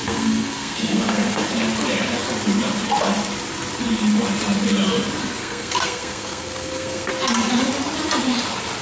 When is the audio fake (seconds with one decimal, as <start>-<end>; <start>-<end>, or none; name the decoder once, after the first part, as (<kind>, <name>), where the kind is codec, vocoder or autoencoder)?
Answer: 0.0-1.4 (codec, SNAC); 5.4-7.1